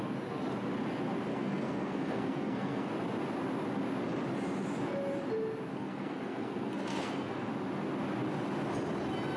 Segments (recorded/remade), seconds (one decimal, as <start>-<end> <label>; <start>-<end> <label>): 0.0-1.3 recorded; 1.3-2.9 remade; 2.9-5.7 recorded; 5.7-7.5 remade; 7.5-9.4 recorded